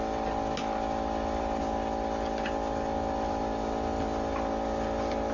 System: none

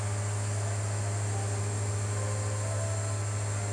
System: none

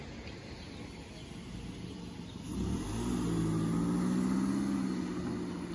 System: none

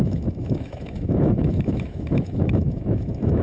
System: autoencoder, DAC-VAE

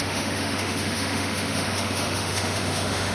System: autoencoder, DAC-VAE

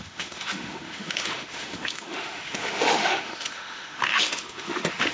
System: autoencoder, DAC-VAE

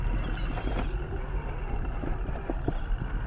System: none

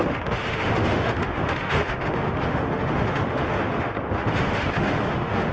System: autoencoder, DAC-VAE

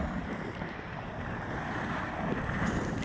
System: none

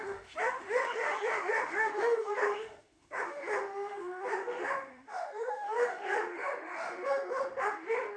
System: autoencoder, DAC-VAE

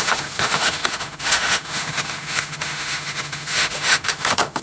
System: autoencoder, DAC-VAE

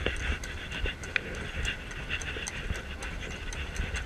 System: none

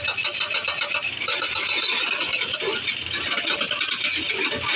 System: none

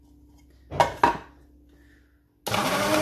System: none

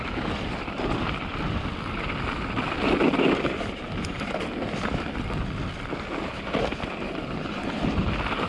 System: none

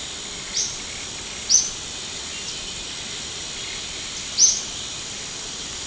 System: none